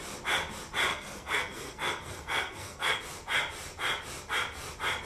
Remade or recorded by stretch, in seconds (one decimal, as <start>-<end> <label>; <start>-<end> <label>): 0.0-0.9 recorded; 0.9-3.0 remade; 3.0-5.1 recorded